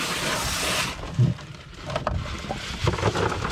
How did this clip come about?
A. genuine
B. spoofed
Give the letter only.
A